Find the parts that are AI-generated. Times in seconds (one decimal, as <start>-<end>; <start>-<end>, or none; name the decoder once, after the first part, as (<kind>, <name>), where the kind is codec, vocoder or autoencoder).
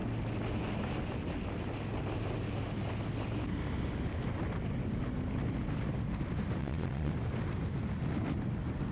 6.6-7.1 (vocoder, Vocos)